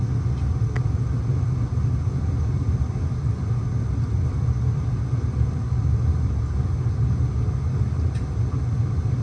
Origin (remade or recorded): recorded